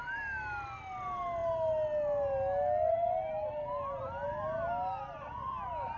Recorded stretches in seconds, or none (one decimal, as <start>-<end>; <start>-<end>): 0.0-6.0